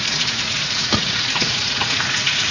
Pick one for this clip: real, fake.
fake